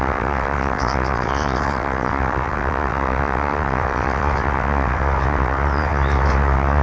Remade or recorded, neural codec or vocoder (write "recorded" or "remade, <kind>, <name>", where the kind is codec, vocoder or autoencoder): remade, vocoder, WaveNeXt